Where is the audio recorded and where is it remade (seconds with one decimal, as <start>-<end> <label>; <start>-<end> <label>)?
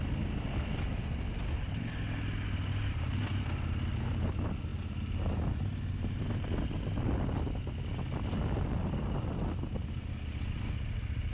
0.0-11.3 recorded